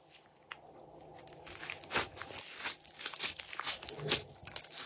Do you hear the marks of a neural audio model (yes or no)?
no